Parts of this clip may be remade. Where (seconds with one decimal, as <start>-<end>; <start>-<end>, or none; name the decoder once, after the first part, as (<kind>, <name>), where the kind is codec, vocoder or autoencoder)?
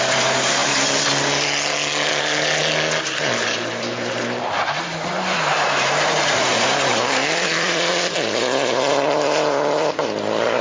0.0-2.6 (vocoder, BigVGAN v2); 3.2-10.6